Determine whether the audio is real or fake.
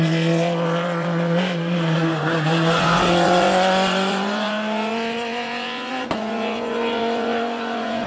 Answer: fake